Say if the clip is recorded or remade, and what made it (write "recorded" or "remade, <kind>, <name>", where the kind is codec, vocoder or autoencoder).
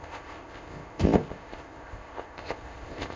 remade, codec, ZipCodec